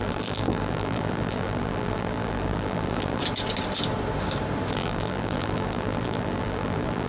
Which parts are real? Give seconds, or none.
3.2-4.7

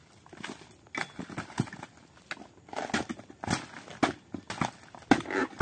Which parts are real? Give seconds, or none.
0.0-5.6

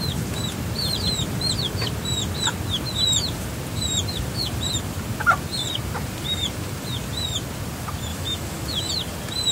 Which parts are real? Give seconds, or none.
0.0-8.1; 8.9-9.5